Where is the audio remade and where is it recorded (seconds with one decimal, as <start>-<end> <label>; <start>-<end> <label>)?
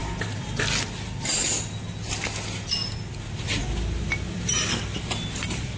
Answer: 0.0-5.8 recorded